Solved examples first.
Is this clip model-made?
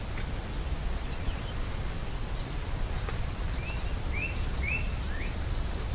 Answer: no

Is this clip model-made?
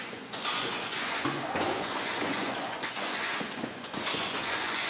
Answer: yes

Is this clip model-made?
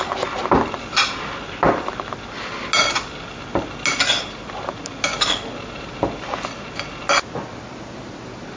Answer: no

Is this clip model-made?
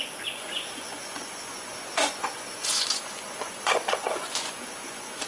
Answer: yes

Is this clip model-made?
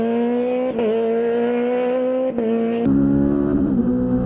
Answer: no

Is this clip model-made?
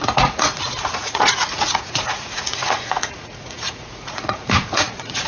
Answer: yes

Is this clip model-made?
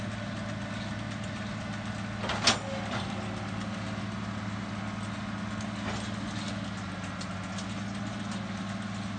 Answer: no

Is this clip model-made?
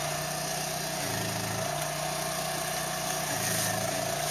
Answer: no